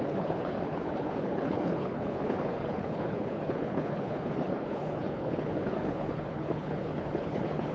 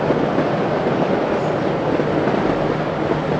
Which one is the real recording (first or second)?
second